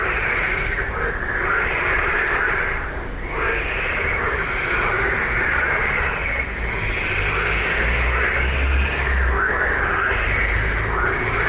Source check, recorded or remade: recorded